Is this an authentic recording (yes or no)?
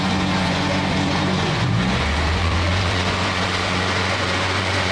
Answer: no